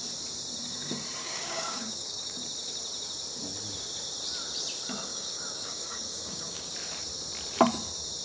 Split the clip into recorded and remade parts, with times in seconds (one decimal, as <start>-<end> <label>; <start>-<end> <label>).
0.0-1.2 recorded; 1.2-2.4 remade; 2.4-5.1 recorded; 5.1-6.7 remade; 6.7-8.2 recorded